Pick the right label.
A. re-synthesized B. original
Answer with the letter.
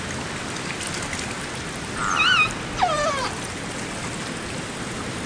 B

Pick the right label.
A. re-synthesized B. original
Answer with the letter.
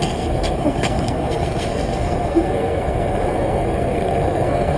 A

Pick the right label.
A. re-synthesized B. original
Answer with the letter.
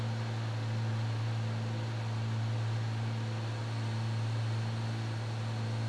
B